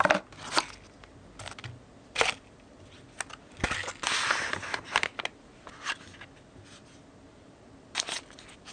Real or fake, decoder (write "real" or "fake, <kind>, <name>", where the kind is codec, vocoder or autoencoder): real